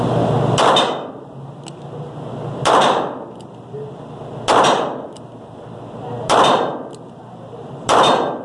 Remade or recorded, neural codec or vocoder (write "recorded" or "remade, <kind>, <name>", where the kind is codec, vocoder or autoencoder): recorded